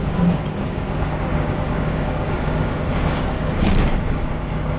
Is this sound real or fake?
fake